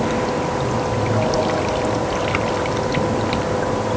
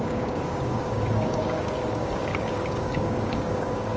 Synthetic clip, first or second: second